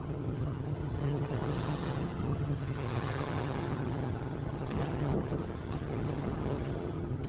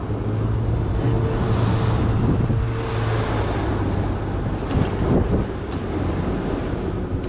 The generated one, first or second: first